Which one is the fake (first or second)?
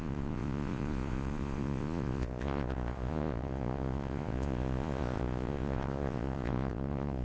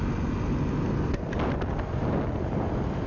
first